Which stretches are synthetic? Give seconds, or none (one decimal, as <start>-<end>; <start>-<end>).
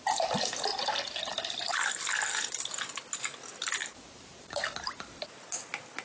3.8-5.1